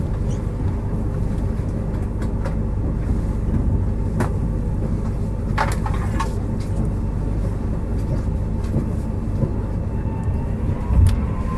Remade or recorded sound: recorded